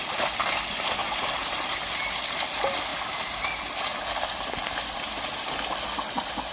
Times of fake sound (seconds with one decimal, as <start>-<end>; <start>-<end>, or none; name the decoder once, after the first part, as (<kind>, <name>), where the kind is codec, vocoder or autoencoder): none